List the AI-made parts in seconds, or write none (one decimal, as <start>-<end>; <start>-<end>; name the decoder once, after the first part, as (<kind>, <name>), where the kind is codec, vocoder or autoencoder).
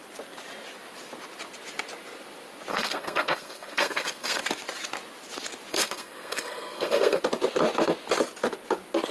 2.7-4.4 (codec, SNAC); 5.7-7.2